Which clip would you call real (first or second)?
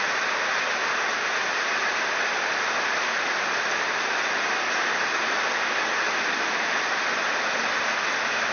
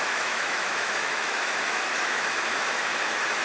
first